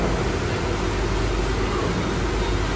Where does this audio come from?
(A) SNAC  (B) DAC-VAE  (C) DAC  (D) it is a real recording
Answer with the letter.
D